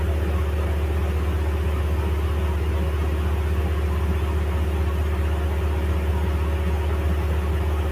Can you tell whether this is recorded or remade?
recorded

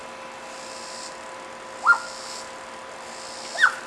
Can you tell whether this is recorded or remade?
recorded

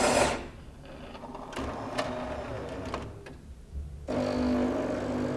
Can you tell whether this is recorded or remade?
recorded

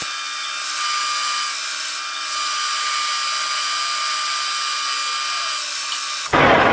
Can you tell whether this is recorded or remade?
recorded